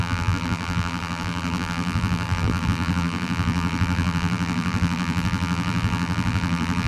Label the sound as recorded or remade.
remade